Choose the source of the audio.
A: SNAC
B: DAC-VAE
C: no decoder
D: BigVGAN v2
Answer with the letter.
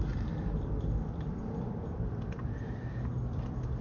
D